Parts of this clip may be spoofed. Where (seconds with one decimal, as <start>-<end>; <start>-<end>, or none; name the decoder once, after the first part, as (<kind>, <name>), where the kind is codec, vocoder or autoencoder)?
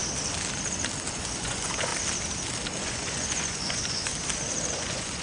1.1-1.9 (vocoder, Vocos); 2.8-4.1; 4.7-5.2